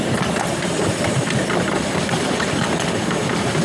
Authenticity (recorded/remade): recorded